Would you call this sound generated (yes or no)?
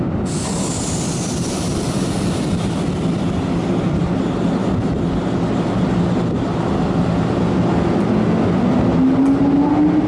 no